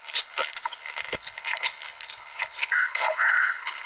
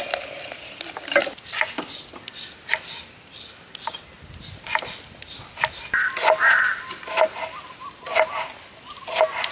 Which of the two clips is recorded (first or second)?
second